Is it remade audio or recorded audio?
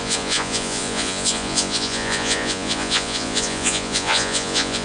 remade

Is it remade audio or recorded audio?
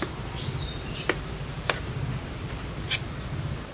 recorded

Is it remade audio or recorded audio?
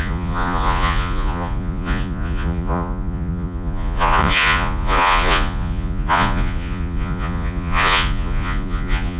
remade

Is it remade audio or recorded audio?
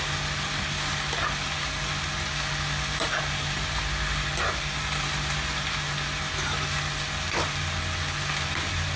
recorded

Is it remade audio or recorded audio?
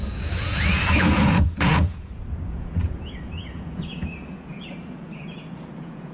remade